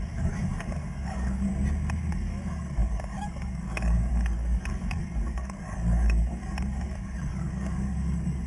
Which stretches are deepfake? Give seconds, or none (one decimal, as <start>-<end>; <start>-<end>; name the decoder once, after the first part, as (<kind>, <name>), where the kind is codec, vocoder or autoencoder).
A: 0.0-1.5 (codec, DAC); 2.1-8.5